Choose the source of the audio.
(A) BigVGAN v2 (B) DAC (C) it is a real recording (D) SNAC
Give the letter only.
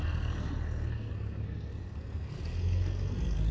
D